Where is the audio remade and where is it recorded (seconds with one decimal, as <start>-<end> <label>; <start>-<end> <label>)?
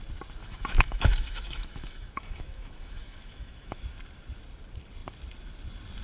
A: 0.0-0.4 recorded; 0.4-3.8 remade; 3.8-6.0 recorded